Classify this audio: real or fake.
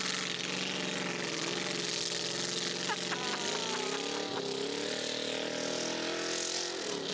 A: real